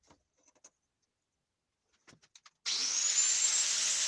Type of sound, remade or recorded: recorded